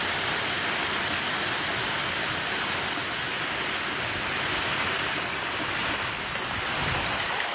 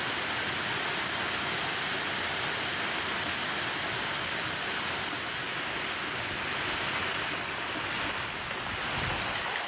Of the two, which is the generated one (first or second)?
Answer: first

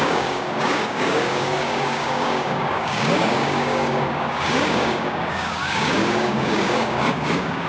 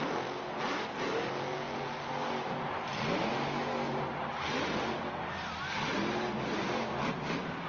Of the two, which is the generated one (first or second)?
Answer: first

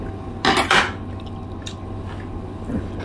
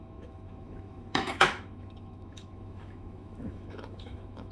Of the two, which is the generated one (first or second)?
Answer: second